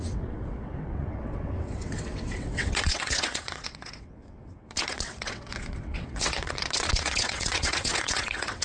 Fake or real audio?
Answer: fake